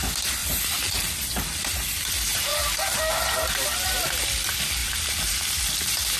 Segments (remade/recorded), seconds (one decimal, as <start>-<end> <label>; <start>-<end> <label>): 0.0-0.4 recorded; 0.4-2.1 remade; 2.1-4.8 recorded; 4.8-5.5 remade; 5.5-6.2 recorded